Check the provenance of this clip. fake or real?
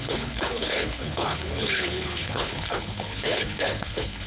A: fake